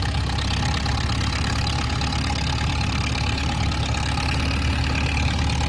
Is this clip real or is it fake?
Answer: real